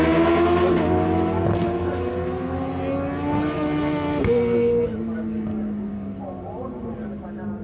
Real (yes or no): yes